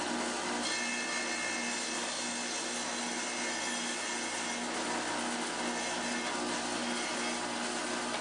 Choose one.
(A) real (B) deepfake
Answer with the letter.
A